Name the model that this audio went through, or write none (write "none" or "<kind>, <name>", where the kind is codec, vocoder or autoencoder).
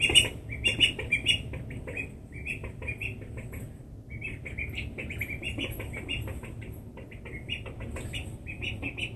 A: none